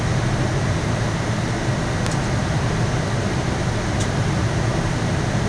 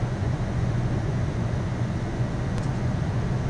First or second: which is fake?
second